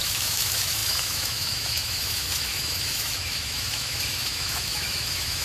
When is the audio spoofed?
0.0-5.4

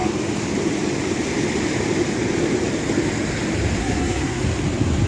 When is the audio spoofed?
3.8-4.4

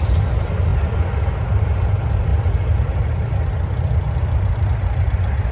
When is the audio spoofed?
none

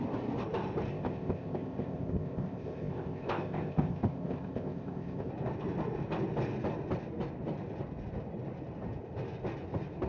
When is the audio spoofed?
0.9-5.3

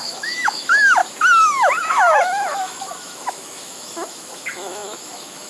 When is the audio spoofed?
0.0-1.0; 1.8-5.5

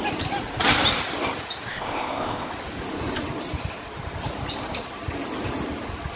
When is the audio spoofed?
1.7-2.5

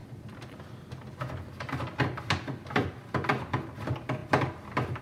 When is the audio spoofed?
0.0-1.2; 4.2-5.0